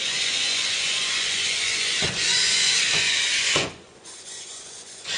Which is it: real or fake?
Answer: fake